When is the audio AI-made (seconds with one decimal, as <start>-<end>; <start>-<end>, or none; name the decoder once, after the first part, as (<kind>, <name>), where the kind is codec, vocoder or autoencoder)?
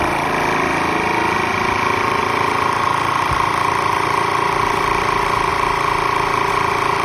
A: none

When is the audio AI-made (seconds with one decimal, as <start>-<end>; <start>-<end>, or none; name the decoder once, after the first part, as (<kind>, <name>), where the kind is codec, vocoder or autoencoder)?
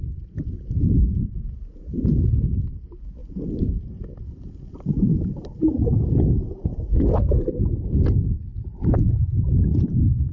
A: none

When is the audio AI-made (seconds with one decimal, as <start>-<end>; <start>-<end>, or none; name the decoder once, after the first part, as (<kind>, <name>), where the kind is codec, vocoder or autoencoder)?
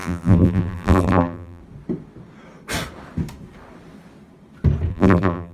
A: 0.0-1.6 (vocoder, BigVGAN v2); 4.9-5.5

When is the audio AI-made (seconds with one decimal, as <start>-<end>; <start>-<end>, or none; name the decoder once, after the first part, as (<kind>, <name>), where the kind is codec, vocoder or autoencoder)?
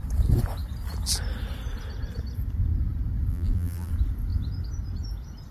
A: 3.3-3.9 (vocoder, BigVGAN v2)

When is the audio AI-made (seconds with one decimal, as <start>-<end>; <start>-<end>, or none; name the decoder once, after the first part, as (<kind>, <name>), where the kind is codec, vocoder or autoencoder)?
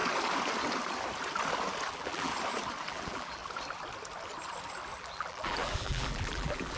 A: 1.9-2.3 (vocoder, BigVGAN v2); 2.9-3.4; 5.0-6.8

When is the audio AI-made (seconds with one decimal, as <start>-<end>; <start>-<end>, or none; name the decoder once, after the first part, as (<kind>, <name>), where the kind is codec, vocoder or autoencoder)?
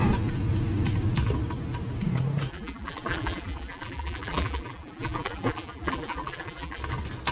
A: 2.5-6.8 (vocoder, BigVGAN v2)